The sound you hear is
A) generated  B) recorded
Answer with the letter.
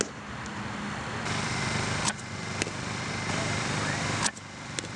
B